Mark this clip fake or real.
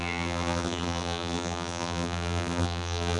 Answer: fake